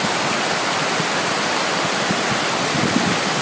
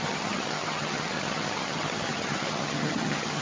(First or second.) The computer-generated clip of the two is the second